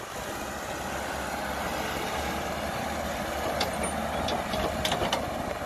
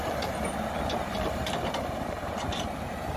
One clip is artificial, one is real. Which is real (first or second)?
first